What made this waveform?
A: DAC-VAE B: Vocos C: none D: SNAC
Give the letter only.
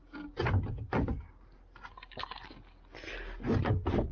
C